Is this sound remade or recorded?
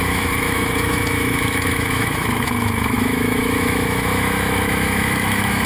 remade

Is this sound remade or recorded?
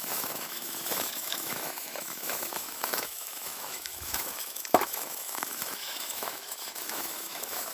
remade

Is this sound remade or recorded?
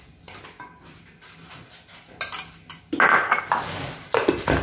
recorded